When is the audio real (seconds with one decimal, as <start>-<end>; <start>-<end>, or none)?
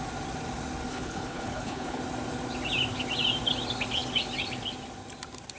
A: 0.0-0.9; 2.0-5.6